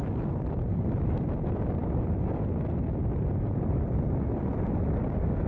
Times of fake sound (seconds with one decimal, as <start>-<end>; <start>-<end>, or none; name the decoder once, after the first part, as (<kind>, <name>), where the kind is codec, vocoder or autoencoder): none